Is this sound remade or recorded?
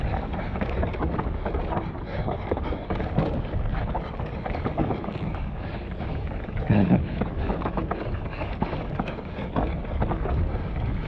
remade